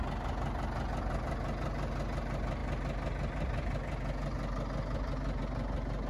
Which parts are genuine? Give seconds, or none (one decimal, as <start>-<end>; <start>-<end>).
0.0-6.1